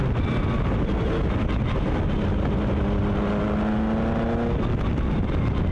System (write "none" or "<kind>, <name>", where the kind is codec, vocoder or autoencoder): none